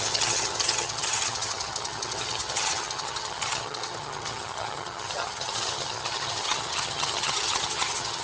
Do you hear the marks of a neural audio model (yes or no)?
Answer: yes